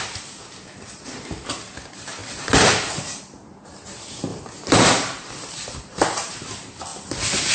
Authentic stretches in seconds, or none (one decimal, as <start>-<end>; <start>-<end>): 0.0-2.2; 3.2-4.3; 6.3-6.9